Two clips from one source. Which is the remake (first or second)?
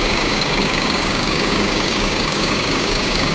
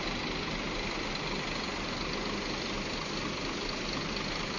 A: first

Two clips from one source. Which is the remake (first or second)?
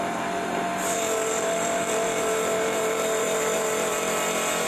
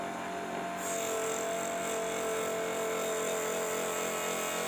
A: first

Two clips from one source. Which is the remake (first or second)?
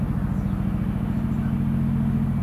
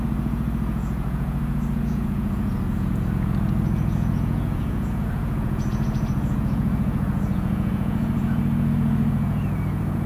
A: second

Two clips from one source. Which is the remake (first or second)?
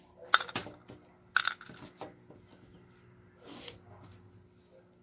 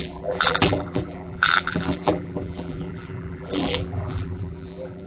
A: second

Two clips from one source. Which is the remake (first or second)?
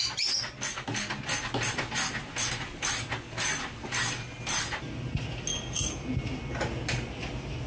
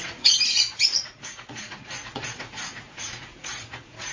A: second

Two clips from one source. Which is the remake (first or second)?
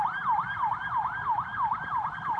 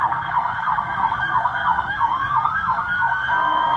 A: second